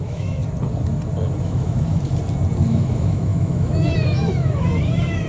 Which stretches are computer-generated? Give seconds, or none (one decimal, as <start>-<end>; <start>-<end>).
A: 0.0-0.4; 1.4-2.1; 2.7-5.3